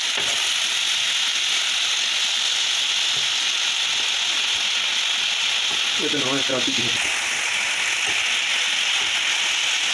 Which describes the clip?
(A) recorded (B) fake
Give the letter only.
A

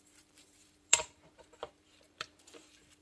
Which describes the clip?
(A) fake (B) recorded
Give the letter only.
A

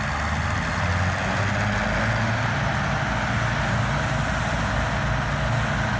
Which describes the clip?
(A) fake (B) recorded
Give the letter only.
B